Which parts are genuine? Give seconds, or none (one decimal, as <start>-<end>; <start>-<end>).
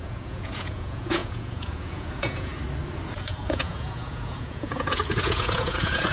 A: 2.5-3.1